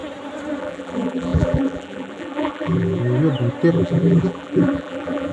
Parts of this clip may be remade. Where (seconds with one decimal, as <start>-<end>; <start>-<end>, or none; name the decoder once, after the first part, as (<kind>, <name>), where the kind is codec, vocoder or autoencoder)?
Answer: 0.6-3.0 (vocoder, BigVGAN v2); 3.7-5.3